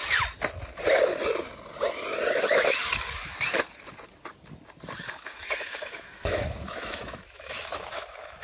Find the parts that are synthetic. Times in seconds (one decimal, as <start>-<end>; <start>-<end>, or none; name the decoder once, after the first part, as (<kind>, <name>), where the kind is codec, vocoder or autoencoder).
5.0-8.4 (autoencoder, DAC-VAE)